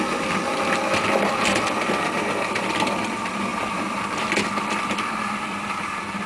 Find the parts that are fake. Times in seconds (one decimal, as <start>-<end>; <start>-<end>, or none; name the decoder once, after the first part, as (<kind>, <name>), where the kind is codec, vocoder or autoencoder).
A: 0.0-0.5 (vocoder, BigVGAN v2); 1.3-6.3